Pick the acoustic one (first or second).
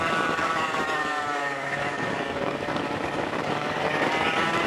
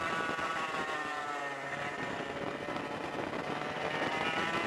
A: second